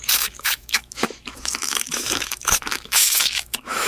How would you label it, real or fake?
fake